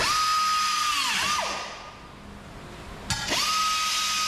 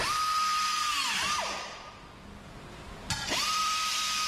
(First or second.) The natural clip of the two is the first